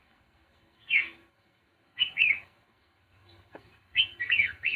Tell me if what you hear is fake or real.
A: fake